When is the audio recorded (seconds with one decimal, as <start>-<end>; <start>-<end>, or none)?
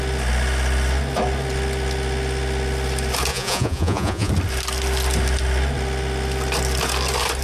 0.0-3.3; 4.3-7.4